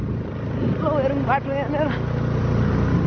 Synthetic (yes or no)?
no